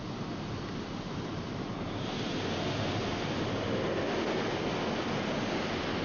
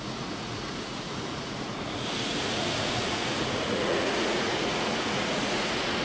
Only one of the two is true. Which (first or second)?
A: first